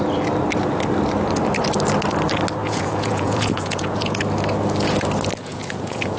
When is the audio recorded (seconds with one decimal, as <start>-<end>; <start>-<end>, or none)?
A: 0.0-2.6; 4.2-5.4

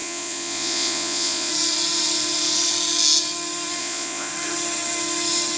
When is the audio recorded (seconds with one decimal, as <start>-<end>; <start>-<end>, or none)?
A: 1.5-3.8; 4.3-5.6